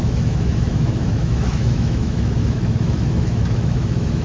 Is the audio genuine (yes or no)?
no